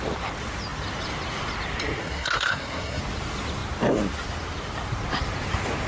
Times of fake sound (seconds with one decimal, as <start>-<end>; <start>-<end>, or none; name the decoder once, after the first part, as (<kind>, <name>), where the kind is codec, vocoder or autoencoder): 2.0-3.0 (codec, SNAC)